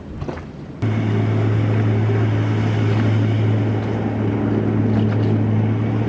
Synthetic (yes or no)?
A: no